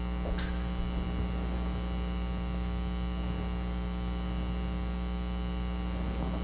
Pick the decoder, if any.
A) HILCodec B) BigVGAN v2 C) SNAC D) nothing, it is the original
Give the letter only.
D